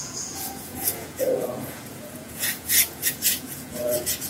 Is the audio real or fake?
fake